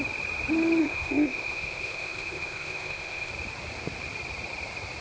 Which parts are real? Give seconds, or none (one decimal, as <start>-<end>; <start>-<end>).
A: 0.0-0.8; 3.3-5.0